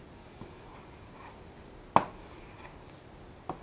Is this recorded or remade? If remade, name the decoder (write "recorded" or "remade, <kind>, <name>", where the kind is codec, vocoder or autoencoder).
recorded